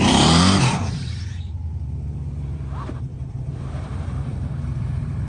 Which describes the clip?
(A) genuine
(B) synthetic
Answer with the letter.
B